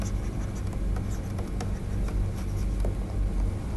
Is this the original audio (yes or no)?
yes